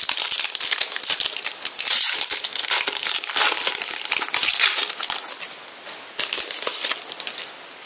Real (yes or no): yes